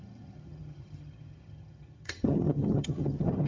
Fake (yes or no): yes